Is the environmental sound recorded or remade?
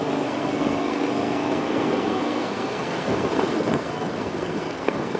remade